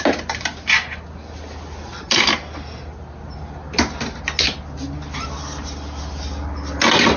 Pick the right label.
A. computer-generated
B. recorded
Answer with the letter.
B